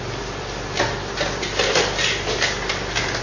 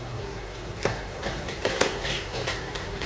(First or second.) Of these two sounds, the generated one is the second